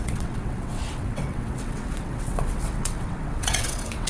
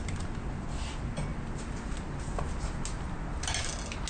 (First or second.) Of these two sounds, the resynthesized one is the first